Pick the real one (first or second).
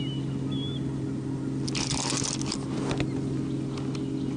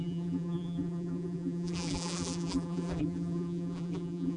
first